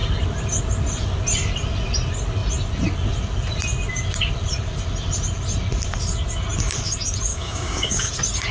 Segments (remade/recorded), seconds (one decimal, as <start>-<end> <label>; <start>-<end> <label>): 0.0-7.3 recorded; 7.3-8.1 remade; 8.1-8.5 recorded